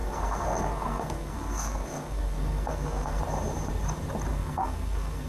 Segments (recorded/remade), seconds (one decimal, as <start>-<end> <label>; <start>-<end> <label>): 0.0-3.2 remade; 3.2-4.3 recorded; 4.3-5.3 remade